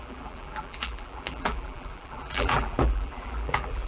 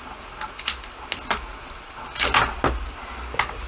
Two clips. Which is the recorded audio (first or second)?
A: second